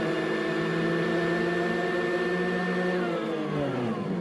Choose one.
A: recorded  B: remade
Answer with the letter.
A